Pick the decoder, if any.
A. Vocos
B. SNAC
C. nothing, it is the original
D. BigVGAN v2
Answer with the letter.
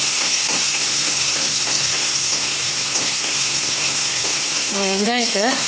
B